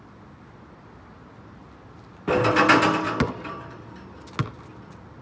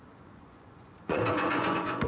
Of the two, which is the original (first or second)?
first